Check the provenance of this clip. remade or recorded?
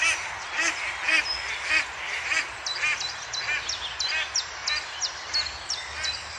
recorded